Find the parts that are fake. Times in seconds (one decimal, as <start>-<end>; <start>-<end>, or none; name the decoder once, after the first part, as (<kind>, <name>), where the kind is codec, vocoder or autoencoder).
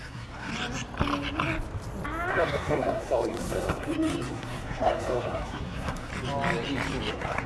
0.0-0.5 (codec, SNAC); 2.3-6.1; 7.1-7.5